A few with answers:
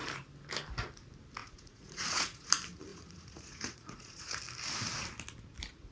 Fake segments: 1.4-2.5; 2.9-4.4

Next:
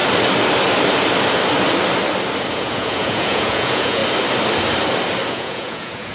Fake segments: 2.5-4.0; 5.3-6.1

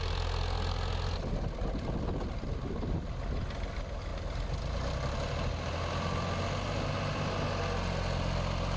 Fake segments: none

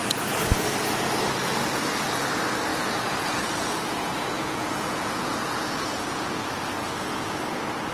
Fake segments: 2.7-7.4